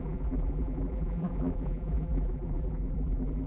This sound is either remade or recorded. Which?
remade